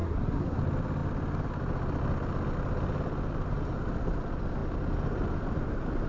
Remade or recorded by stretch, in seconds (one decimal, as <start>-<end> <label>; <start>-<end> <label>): 0.0-0.6 remade; 0.6-6.1 recorded